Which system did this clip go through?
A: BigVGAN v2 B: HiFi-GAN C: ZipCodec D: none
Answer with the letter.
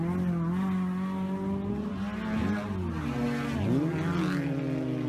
D